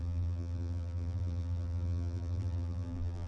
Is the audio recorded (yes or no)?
no